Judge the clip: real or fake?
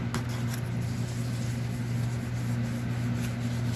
real